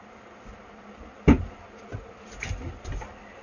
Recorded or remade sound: recorded